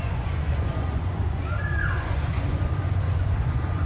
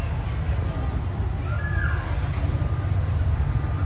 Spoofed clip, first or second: first